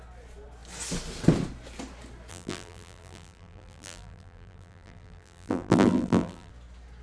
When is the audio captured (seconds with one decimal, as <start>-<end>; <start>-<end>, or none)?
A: 0.0-2.3; 6.5-7.0